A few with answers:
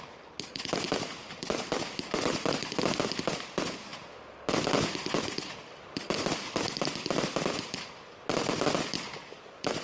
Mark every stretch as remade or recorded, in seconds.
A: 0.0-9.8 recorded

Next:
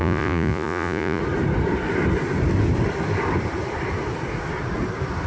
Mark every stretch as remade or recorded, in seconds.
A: 0.0-1.2 remade; 1.2-5.3 recorded